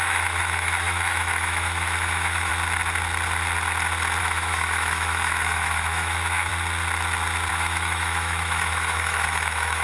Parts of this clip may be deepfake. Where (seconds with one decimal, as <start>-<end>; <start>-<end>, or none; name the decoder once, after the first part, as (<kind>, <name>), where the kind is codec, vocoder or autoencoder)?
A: 0.0-2.5 (autoencoder, DAC-VAE); 4.2-6.5; 7.5-9.8